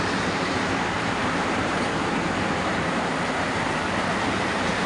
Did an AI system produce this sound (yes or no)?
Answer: yes